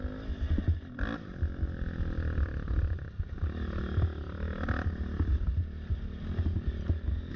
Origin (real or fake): real